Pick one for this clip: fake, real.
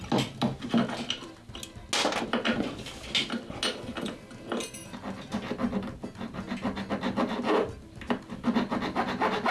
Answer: real